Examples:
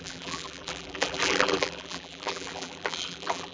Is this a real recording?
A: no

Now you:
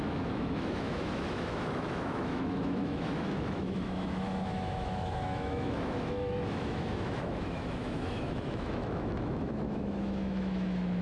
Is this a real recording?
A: no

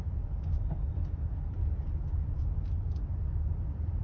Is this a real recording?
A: yes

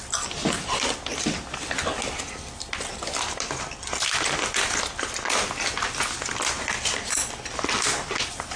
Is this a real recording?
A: yes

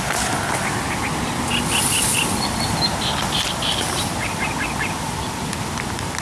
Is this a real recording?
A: yes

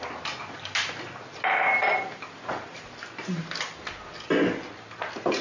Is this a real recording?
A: yes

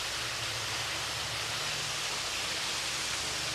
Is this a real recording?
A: yes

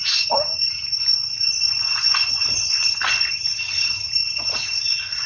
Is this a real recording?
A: yes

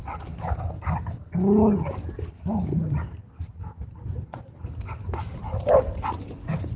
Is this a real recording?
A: yes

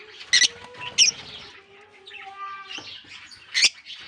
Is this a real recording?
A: yes